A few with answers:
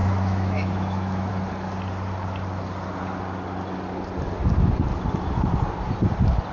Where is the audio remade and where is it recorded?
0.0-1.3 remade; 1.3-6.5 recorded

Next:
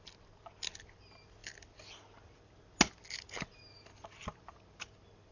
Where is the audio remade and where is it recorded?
0.0-5.3 recorded

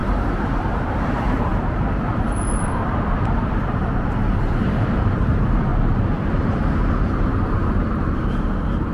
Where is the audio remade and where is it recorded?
0.0-5.7 remade; 5.7-6.3 recorded; 6.3-8.9 remade